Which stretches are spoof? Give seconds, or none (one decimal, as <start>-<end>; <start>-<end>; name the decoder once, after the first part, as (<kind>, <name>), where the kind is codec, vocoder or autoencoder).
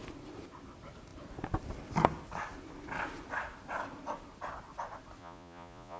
5.2-6.0 (vocoder, Vocos)